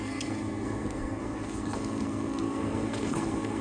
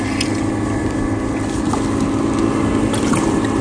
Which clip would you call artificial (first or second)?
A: first